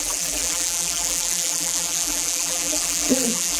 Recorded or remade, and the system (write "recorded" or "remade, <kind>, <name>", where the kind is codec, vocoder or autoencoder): remade, vocoder, BigVGAN v2